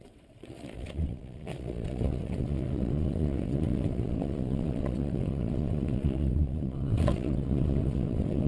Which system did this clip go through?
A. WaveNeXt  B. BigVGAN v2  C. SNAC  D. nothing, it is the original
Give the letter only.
A